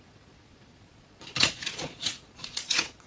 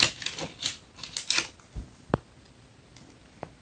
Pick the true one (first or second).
second